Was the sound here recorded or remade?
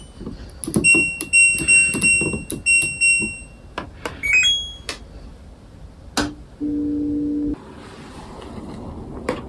recorded